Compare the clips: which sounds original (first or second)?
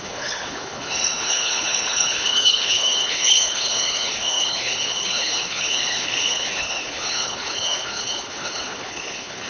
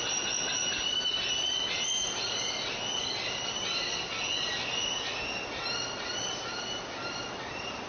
second